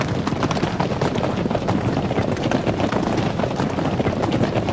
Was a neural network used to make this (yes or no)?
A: no